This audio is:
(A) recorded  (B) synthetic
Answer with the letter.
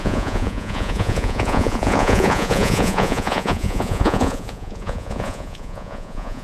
B